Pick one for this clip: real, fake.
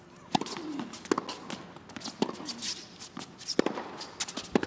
real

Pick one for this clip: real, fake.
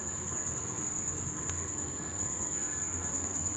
fake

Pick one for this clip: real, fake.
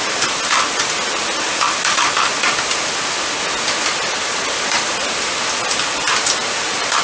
real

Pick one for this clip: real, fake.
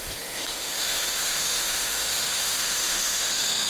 fake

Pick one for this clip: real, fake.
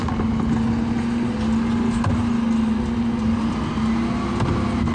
real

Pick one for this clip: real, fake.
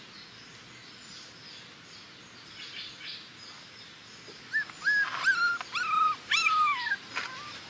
real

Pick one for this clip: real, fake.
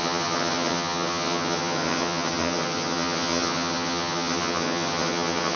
fake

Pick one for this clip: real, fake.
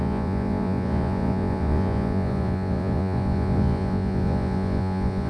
fake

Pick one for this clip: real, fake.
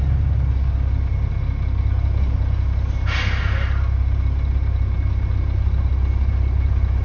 real